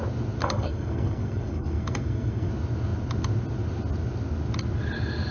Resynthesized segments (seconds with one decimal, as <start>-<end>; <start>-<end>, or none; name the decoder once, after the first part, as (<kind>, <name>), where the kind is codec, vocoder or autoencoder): 0.4-2.5 (codec, SNAC)